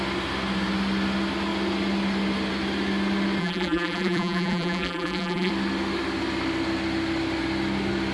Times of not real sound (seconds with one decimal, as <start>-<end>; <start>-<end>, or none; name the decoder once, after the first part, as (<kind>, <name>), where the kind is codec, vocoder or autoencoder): 3.4-5.5 (vocoder, BigVGAN v2)